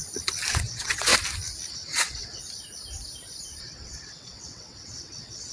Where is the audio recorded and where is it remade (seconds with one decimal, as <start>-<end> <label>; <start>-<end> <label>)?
0.0-0.5 recorded; 0.5-1.1 remade; 1.1-1.7 recorded; 1.7-2.4 remade; 2.4-3.6 recorded; 3.6-5.5 remade